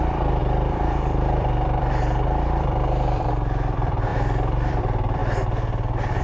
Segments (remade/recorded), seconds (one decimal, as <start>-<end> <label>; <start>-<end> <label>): 0.0-5.2 remade; 5.2-6.2 recorded